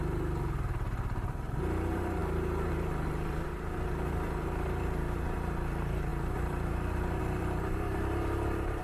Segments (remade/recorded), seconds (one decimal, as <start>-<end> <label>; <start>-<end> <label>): 0.0-8.8 remade